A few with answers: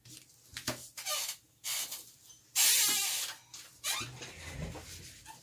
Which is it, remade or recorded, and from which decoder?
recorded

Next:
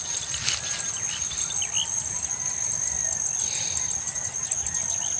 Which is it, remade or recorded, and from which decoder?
recorded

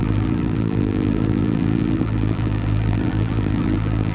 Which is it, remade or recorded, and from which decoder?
remade, vocoder, BigVGAN v2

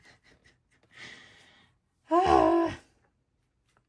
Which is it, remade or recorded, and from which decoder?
recorded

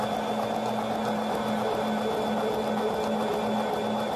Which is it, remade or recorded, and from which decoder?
recorded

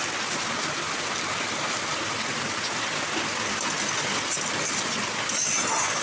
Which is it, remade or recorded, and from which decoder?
recorded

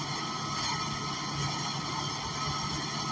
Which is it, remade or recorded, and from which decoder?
recorded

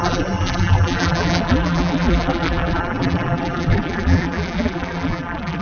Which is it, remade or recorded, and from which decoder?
remade, vocoder, BigVGAN v2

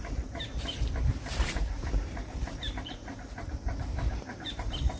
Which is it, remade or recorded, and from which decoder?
remade, vocoder, BigVGAN v2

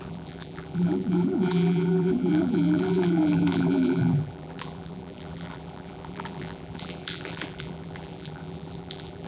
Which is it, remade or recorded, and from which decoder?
remade, vocoder, BigVGAN v2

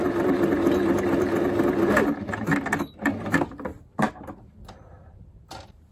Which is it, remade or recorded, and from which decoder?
remade, vocoder, BigVGAN v2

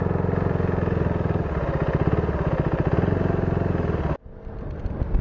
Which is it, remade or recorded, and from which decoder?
recorded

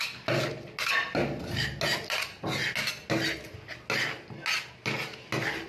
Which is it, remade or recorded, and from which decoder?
recorded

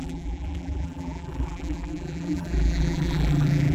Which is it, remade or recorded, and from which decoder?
remade, vocoder, BigVGAN v2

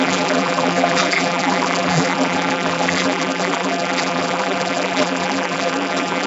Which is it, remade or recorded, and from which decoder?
remade, vocoder, BigVGAN v2